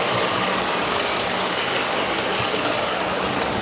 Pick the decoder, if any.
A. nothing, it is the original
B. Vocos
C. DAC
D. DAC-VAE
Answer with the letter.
C